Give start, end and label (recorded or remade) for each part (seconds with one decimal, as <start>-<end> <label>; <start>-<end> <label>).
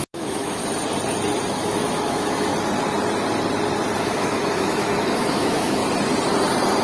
0.0-0.6 remade; 0.6-1.5 recorded; 1.5-2.5 remade; 2.5-4.0 recorded; 4.0-5.8 remade; 5.8-6.8 recorded